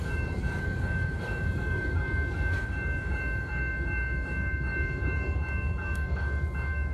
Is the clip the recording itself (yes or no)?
no